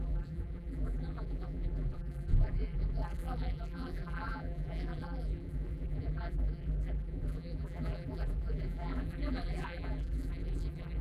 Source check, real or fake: fake